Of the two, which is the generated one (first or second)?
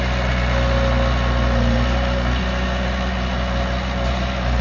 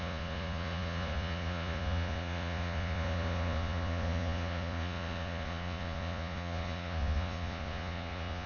second